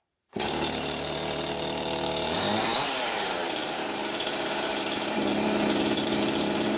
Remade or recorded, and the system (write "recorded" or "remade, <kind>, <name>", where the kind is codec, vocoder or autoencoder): remade, vocoder, BigVGAN v2